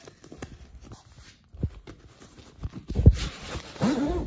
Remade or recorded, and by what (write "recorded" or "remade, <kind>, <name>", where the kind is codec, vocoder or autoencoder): recorded